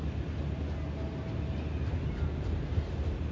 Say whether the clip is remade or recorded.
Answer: recorded